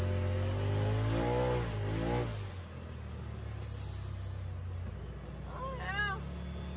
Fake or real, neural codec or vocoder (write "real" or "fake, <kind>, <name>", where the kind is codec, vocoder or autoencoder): real